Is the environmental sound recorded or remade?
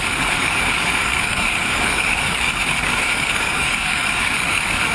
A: remade